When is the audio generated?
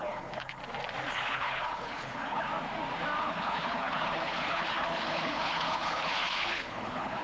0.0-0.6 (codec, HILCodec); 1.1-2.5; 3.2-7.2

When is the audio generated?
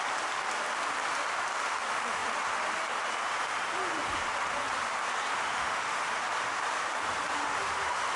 5.4-6.0 (autoencoder, DAC-VAE)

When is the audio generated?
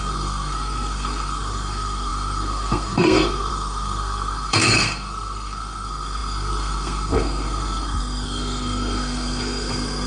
0.0-10.1 (codec, SNAC)